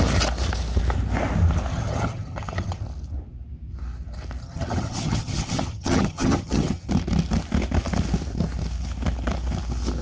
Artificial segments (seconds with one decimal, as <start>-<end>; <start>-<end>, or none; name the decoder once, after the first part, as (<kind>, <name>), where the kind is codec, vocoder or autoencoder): 1.7-2.8 (vocoder, HiFi-GAN); 4.4-6.9